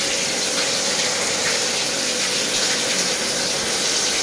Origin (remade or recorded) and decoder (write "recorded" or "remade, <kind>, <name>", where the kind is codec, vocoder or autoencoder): recorded